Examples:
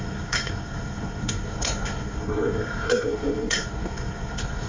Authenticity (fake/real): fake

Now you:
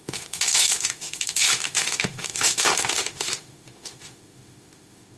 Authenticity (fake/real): fake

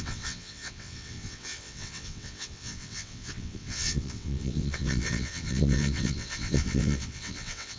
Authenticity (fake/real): fake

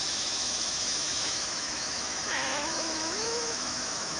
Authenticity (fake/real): fake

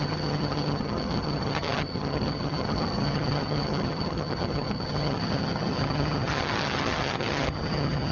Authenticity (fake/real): fake